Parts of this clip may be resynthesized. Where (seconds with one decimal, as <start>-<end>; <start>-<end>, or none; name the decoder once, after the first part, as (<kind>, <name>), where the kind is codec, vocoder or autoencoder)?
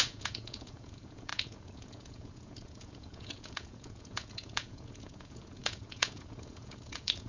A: 0.0-7.3 (vocoder, Vocos)